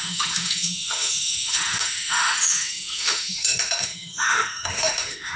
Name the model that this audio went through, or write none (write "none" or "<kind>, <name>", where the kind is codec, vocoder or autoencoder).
autoencoder, DAC-VAE